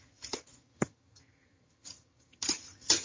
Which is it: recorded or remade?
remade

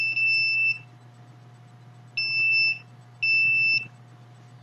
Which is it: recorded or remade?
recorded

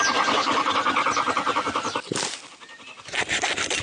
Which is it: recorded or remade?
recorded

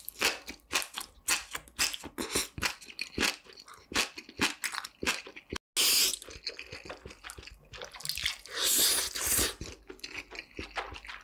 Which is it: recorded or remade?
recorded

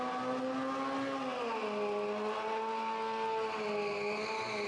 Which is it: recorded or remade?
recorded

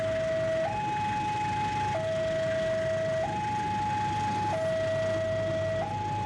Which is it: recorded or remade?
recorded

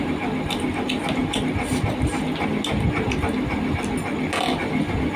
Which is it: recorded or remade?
recorded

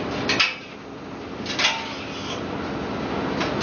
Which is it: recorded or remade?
recorded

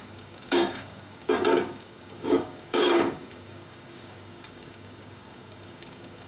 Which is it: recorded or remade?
remade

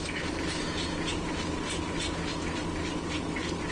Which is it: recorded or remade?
recorded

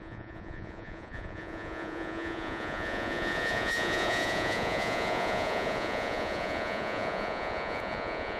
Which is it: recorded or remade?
remade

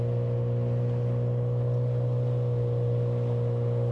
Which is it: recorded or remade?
recorded